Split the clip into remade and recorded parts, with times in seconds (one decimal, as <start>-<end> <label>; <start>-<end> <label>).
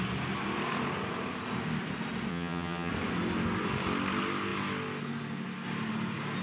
0.0-2.3 recorded; 2.3-2.9 remade; 2.9-6.4 recorded